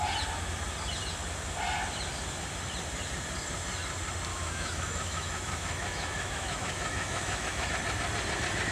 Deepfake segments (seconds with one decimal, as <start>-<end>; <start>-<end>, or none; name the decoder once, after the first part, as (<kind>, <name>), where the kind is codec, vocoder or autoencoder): 4.3-7.7 (autoencoder, DAC-VAE)